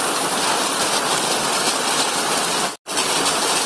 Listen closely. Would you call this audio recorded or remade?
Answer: recorded